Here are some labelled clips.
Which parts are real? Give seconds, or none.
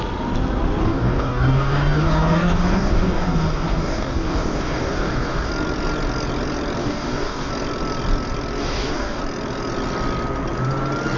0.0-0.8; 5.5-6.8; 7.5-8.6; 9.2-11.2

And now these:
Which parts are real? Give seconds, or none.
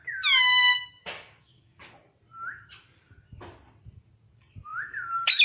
0.0-0.4; 1.8-5.4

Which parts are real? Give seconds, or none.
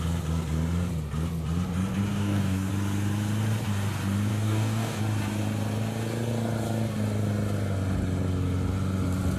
0.0-2.1; 2.7-4.3; 5.0-9.4